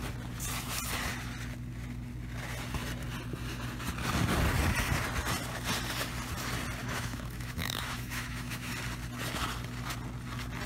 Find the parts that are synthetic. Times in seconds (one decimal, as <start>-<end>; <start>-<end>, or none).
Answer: 6.8-8.7